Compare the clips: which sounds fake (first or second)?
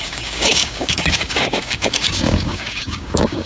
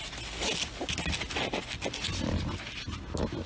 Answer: first